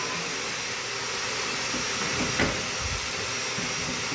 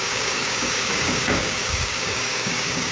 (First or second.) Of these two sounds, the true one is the first